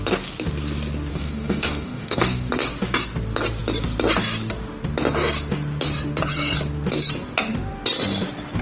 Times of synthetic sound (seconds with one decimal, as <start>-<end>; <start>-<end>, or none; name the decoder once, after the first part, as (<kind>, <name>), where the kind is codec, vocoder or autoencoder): 1.1-2.5 (codec, DAC)